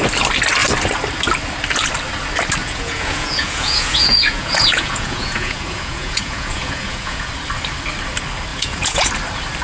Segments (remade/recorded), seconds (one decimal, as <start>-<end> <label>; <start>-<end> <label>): 0.0-2.6 recorded; 2.6-7.3 remade; 7.3-8.5 recorded; 8.5-9.1 remade; 9.1-9.6 recorded